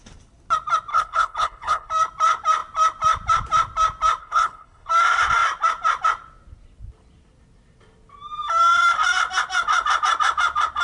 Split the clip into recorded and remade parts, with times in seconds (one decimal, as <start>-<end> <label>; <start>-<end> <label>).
0.0-0.9 recorded; 0.9-1.9 remade; 1.9-4.2 recorded; 4.2-4.9 remade; 4.9-10.8 recorded